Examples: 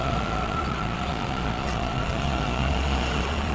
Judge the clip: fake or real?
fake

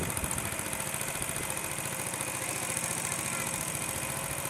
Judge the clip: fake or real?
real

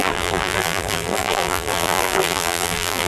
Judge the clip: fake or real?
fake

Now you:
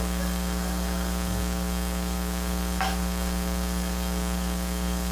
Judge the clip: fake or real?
fake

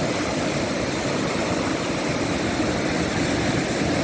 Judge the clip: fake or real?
real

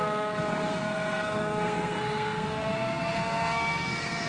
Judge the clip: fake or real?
fake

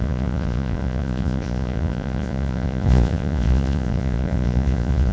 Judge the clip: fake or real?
fake